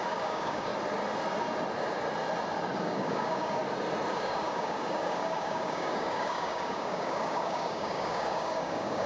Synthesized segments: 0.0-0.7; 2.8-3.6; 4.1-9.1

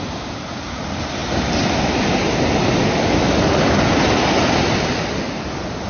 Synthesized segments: none

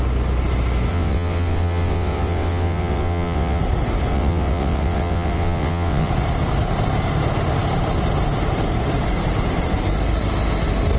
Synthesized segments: 0.9-3.6; 4.1-6.1

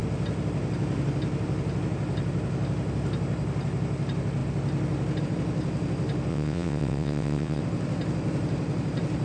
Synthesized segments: 6.3-7.6

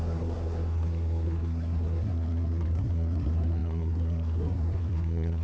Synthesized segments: 0.0-5.4

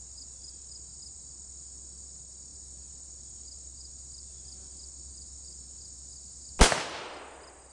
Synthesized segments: none